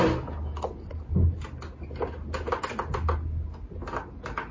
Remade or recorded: recorded